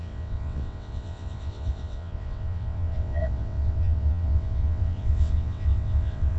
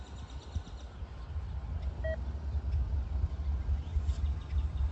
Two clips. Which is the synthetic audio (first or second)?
first